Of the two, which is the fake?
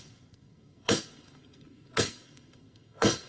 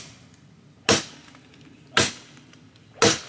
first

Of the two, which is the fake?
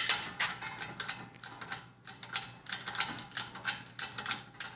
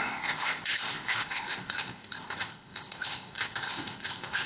second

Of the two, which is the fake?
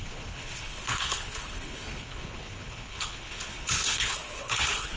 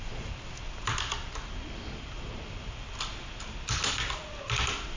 first